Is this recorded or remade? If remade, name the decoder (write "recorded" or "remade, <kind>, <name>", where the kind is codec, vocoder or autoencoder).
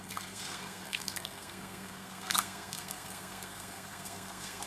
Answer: remade, codec, SNAC